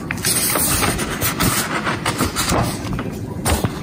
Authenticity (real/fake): real